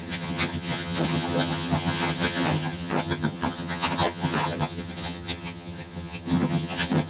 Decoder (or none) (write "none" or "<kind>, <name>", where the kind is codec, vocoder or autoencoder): vocoder, HiFi-GAN